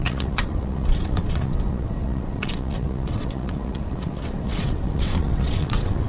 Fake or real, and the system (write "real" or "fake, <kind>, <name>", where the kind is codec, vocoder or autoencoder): fake, vocoder, WaveNeXt